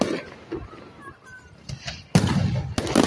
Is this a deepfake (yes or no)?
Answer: no